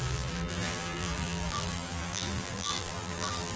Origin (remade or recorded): remade